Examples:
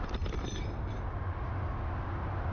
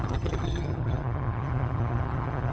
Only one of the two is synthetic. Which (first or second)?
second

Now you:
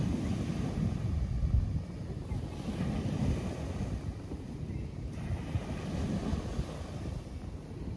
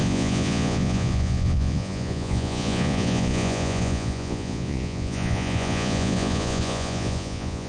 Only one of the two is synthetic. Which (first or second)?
second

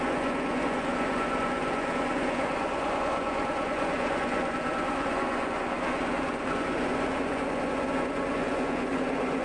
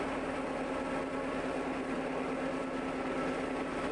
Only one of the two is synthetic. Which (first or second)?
first